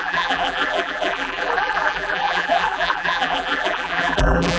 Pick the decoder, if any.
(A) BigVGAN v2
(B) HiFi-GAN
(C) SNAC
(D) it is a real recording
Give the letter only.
A